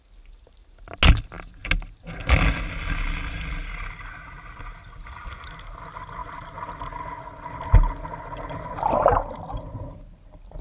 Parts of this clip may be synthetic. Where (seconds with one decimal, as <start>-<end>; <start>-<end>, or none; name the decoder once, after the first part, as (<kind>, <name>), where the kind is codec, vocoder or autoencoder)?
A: none